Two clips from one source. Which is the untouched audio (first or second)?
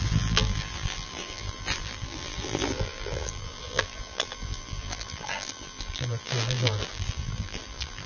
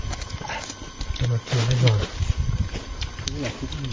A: second